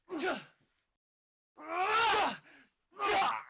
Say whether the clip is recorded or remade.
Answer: recorded